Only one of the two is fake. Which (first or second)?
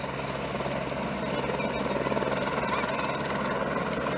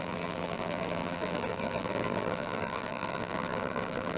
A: second